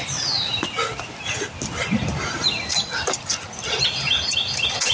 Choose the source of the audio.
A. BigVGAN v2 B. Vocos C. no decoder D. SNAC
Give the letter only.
C